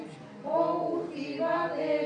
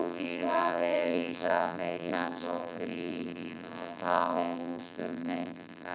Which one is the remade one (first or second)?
second